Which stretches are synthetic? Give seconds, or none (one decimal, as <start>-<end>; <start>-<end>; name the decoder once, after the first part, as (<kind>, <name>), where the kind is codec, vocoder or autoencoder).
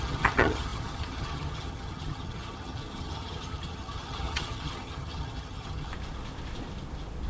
0.0-5.9 (vocoder, HiFi-GAN)